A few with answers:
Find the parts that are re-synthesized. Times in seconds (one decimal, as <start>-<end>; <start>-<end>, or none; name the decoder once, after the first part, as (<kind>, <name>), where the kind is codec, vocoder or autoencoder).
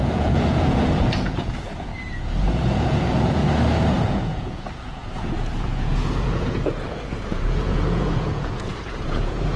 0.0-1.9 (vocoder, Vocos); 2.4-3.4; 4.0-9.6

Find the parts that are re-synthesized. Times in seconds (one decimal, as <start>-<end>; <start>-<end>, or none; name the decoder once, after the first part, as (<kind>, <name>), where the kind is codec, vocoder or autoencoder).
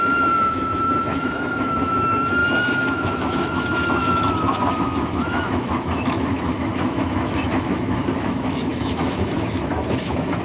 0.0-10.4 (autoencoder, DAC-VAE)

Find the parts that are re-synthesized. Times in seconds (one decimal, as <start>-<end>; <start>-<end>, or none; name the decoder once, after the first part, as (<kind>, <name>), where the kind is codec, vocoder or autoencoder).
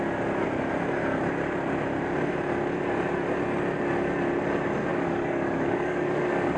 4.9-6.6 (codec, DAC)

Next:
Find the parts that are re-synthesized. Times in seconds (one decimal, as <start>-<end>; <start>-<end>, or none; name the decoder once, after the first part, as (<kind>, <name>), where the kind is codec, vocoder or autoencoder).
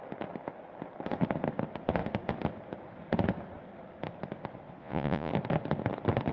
4.8-5.3 (vocoder, Vocos)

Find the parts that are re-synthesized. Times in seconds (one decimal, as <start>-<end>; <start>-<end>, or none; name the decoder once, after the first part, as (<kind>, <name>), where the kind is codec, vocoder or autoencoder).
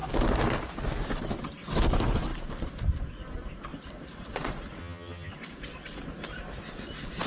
4.8-5.3 (vocoder, HiFi-GAN)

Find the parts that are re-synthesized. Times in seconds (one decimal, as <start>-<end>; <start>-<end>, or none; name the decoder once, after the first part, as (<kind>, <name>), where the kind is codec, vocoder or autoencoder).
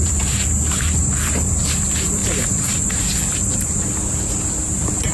0.0-5.1 (vocoder, BigVGAN v2)